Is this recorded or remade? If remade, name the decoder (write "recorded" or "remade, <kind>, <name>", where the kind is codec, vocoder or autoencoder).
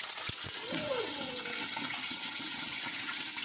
remade, vocoder, WaveNeXt